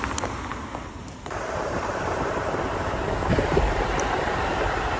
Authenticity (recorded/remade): remade